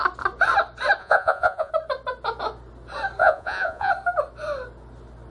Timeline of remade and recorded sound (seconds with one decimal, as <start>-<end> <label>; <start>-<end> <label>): 0.0-1.0 recorded; 1.0-1.7 remade; 1.7-3.2 recorded; 3.2-3.9 remade; 3.9-5.3 recorded